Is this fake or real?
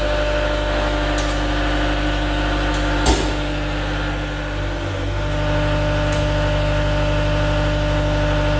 real